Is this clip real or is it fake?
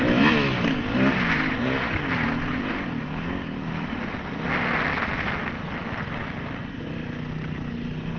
real